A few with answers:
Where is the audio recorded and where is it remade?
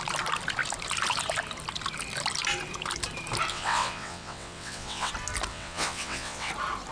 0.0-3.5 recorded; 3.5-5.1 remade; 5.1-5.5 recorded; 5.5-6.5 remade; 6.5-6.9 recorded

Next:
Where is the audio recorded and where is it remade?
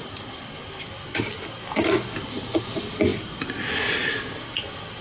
0.0-5.0 recorded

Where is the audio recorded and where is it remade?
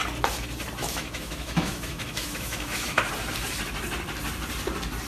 0.0-0.8 recorded; 0.8-3.1 remade; 3.1-5.1 recorded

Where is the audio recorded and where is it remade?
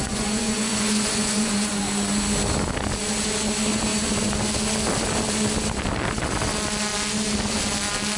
0.0-1.8 remade; 1.8-8.2 recorded